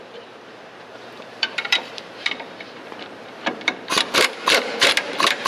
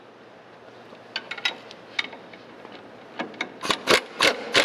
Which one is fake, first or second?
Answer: first